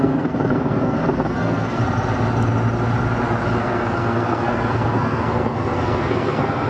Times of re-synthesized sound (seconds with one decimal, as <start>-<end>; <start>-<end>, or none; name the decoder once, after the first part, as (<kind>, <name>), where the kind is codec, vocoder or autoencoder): 0.0-1.8 (codec, SNAC); 3.6-6.7